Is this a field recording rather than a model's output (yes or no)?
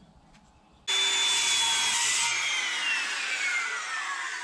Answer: yes